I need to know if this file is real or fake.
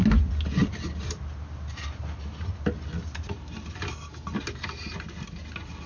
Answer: real